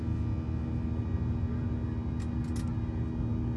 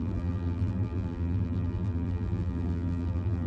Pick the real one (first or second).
first